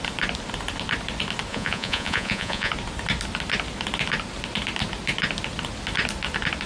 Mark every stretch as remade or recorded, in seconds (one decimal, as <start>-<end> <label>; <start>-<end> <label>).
0.0-1.5 recorded; 1.5-2.7 remade; 2.7-6.7 recorded